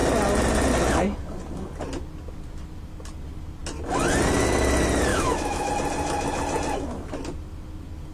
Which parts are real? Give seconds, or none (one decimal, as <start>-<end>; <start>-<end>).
0.0-5.1; 5.7-8.1